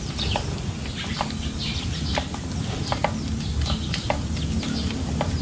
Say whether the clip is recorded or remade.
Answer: recorded